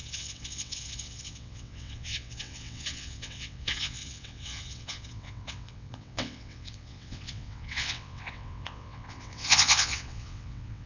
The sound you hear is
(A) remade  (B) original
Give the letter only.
A